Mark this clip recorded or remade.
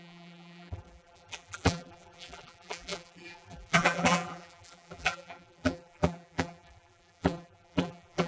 remade